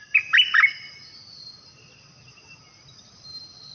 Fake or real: real